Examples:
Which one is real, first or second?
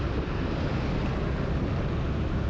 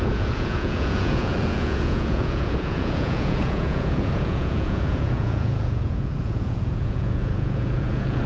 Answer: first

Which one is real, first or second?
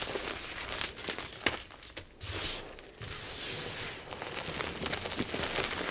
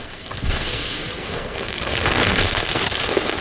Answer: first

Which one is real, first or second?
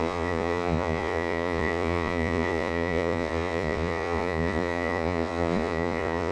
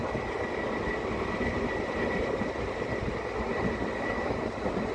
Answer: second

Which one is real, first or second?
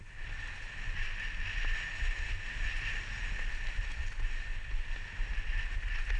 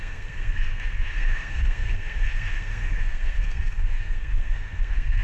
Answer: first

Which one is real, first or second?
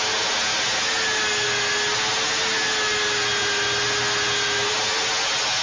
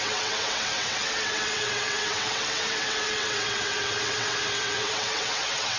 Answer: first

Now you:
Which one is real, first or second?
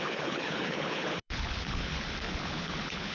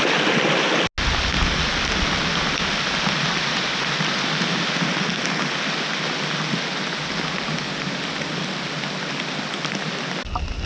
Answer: second